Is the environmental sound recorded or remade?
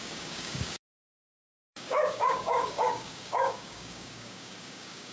remade